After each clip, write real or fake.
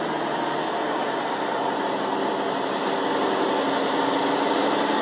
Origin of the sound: real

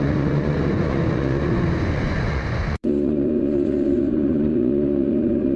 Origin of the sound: fake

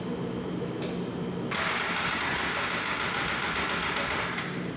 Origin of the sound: real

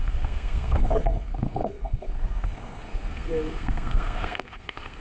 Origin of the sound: fake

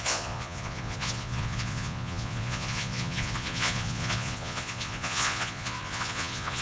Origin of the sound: fake